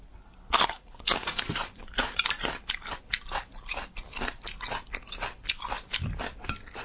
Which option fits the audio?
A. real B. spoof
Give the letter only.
A